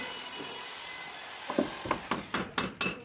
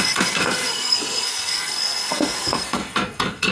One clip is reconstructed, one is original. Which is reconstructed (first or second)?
second